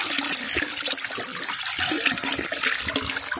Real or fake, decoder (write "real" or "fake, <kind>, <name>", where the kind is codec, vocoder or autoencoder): real